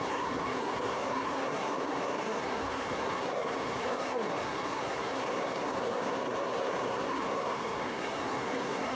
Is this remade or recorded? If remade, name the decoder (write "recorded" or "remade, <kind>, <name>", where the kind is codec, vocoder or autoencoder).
remade, codec, SNAC